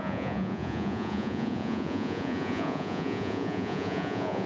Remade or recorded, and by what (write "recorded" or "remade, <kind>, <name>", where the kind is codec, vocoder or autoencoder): remade, vocoder, Vocos